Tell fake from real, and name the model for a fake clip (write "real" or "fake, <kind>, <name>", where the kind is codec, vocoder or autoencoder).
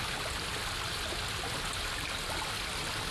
real